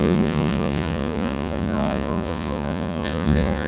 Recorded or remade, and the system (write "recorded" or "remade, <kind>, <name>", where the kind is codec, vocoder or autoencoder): remade, vocoder, Vocos